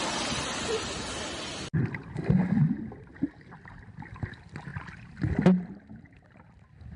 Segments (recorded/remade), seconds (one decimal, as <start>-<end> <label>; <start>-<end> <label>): 0.0-7.0 recorded